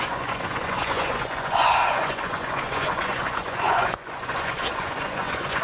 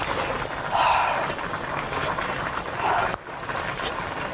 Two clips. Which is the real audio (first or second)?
second